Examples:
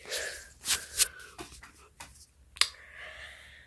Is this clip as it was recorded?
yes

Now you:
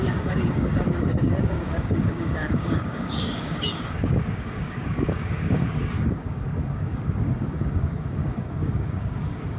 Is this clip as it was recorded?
no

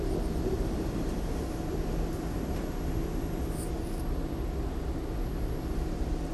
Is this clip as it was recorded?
yes